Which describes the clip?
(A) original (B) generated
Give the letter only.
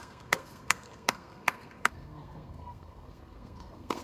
B